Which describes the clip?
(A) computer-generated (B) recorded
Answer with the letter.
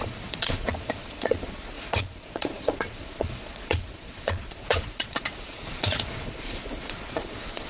A